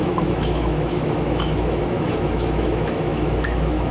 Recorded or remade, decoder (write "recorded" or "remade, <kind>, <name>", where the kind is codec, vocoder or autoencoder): remade, autoencoder, DAC-VAE